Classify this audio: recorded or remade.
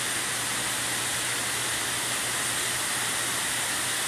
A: recorded